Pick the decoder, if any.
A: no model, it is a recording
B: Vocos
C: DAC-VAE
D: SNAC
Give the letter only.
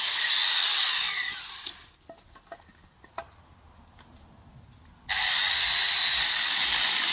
A